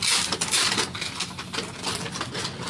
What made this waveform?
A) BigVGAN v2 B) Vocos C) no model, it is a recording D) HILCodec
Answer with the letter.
C